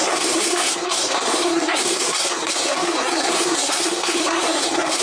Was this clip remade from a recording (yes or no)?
yes